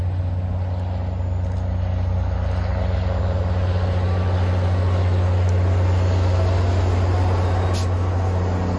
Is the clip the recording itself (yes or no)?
yes